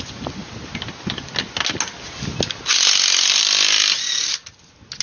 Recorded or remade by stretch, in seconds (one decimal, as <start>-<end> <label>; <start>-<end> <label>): 0.0-5.0 recorded